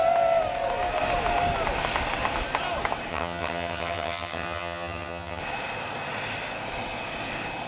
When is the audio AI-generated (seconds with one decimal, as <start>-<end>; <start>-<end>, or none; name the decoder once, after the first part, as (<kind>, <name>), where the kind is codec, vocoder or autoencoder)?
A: 3.1-5.4 (vocoder, HiFi-GAN)